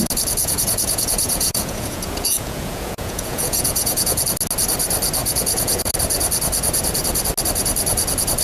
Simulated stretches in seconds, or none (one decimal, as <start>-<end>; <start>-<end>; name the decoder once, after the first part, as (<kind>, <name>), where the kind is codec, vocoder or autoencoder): 0.4-4.2 (vocoder, Vocos); 5.2-5.9